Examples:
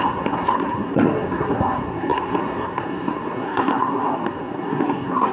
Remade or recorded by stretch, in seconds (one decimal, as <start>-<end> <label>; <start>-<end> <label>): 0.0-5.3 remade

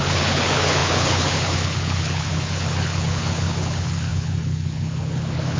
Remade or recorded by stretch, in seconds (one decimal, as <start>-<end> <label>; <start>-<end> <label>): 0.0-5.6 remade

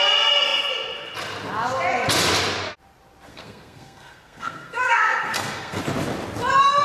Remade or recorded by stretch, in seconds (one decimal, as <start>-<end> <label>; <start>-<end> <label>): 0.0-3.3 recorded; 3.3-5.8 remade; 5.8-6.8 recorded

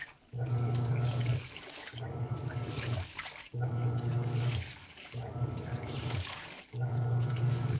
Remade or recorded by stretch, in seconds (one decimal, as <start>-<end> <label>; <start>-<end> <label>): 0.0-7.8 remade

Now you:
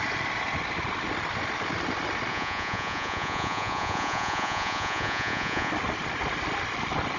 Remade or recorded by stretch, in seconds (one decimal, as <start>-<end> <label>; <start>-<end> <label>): 0.0-2.3 recorded; 2.3-5.7 remade; 5.7-7.2 recorded